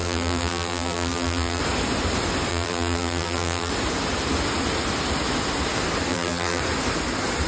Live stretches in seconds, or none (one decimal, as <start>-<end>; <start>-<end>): 1.6-2.5; 3.7-6.1; 6.6-7.5